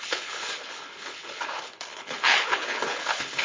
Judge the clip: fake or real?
fake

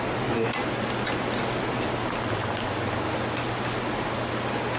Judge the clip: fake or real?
real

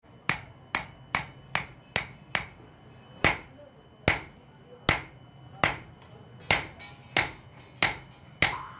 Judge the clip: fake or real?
real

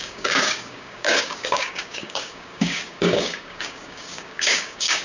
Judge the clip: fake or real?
fake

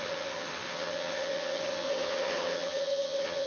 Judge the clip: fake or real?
fake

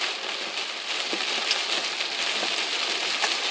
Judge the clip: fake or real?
real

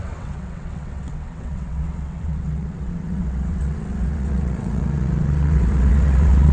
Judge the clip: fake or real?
fake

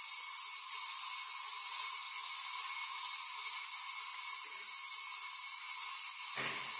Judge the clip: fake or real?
real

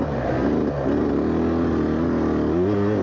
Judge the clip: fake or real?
real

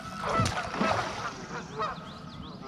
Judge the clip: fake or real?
real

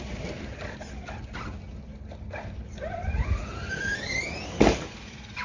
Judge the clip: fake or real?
real